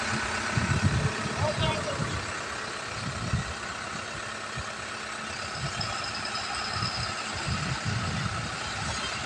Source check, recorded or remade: recorded